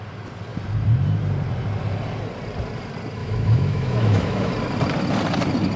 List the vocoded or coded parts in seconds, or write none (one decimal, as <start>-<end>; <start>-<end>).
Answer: 3.2-4.5